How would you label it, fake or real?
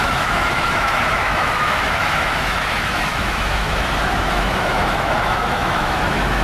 fake